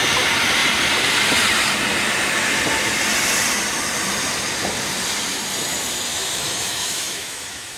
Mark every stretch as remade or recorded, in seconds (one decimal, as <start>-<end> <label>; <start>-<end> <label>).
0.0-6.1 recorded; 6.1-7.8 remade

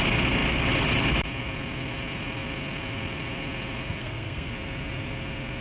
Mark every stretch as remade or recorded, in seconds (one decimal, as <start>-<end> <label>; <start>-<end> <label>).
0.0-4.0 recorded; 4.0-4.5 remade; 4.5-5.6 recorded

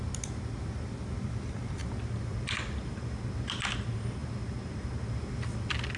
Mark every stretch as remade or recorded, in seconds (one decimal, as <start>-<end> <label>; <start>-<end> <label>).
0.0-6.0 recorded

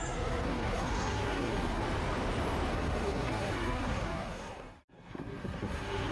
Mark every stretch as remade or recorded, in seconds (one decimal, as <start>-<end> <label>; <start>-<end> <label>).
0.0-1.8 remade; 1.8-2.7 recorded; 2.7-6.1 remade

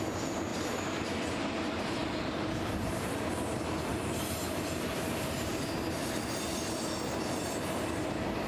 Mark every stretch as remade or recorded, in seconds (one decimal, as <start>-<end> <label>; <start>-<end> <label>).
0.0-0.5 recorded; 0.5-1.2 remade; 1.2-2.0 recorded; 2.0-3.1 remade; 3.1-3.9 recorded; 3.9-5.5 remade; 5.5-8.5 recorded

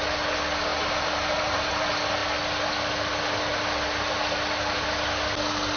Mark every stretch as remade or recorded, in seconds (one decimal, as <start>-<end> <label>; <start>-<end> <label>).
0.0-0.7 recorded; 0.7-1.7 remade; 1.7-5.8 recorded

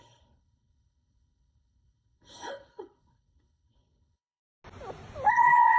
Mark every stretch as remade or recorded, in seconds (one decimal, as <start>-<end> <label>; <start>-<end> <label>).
0.0-4.4 remade; 4.4-5.3 recorded; 5.3-5.8 remade